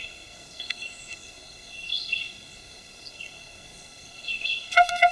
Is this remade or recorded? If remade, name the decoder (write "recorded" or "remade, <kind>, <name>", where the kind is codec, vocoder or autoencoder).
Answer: remade, codec, SNAC